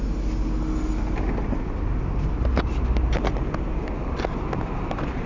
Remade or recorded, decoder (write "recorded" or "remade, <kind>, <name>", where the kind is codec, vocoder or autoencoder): recorded